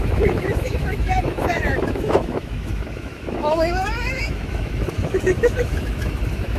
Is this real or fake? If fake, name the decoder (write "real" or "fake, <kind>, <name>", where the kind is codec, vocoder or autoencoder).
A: fake, autoencoder, DAC-VAE